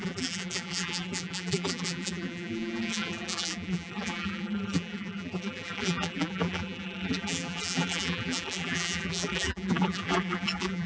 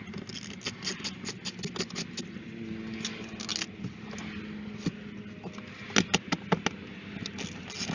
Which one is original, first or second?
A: second